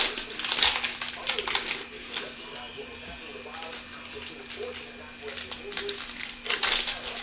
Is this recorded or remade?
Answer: recorded